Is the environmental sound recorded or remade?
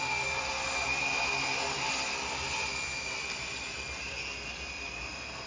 recorded